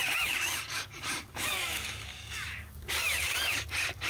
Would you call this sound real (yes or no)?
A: no